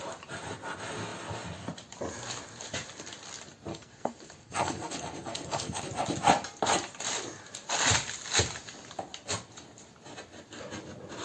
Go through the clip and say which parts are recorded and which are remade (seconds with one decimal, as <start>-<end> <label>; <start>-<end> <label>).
0.0-3.7 recorded; 3.7-5.8 remade; 5.8-11.2 recorded